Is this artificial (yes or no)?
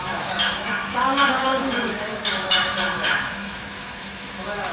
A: yes